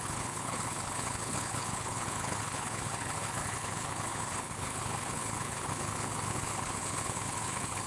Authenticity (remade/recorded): remade